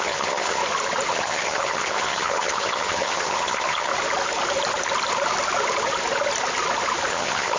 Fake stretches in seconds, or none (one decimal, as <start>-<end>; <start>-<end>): 0.0-0.6; 1.1-3.9; 7.1-7.6